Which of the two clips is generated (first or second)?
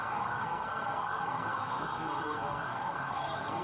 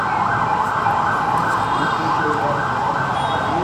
first